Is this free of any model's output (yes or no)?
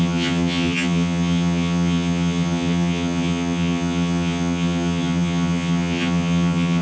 no